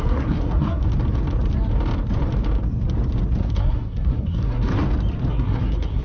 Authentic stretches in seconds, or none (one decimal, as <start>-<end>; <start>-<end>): 0.8-3.4; 4.7-5.3